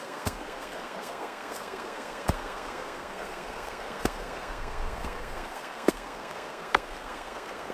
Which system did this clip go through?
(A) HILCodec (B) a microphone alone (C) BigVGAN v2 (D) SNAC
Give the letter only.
D